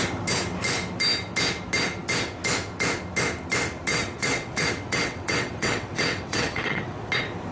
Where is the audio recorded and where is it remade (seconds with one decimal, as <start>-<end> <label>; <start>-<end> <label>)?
0.0-3.9 recorded; 3.9-7.0 remade; 7.0-7.5 recorded